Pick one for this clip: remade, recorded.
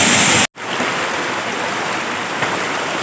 recorded